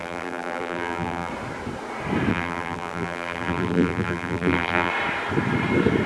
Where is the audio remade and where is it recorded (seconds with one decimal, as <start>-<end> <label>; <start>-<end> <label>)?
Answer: 0.0-1.3 remade; 1.3-2.3 recorded; 2.3-4.9 remade; 4.9-6.1 recorded